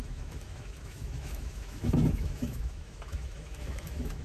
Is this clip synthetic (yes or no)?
yes